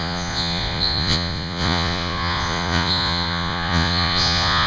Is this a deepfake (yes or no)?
yes